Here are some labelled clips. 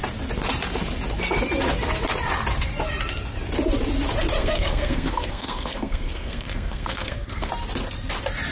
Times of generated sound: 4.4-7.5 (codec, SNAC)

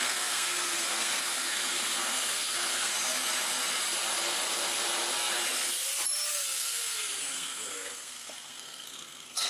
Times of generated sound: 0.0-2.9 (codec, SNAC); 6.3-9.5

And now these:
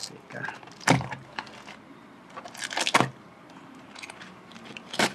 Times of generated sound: 3.1-5.1 (vocoder, BigVGAN v2)

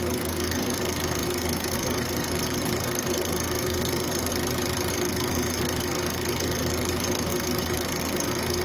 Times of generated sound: 0.0-4.3 (codec, SNAC); 4.9-8.6

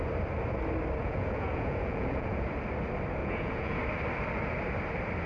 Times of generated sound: 1.0-2.4 (vocoder, Vocos); 3.2-3.8